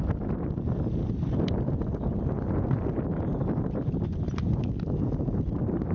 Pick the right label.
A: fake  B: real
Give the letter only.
B